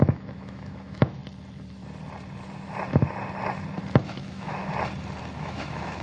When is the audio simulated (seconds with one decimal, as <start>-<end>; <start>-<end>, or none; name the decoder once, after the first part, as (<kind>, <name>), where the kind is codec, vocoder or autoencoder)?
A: 0.0-1.2 (autoencoder, DAC-VAE); 4.0-4.6; 5.4-6.0

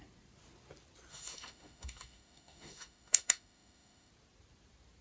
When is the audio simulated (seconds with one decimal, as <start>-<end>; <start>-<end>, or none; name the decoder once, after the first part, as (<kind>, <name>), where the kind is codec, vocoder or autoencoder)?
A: 1.1-4.1 (autoencoder, DAC-VAE)

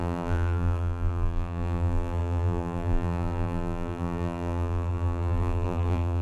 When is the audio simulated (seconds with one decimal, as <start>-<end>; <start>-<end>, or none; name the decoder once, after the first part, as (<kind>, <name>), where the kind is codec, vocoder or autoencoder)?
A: 0.0-6.2 (vocoder, BigVGAN v2)

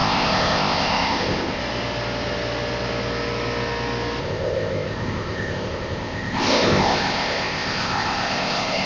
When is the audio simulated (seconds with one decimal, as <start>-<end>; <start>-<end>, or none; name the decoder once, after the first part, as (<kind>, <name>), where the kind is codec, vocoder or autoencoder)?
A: 0.0-1.6 (codec, ZipCodec); 4.2-8.9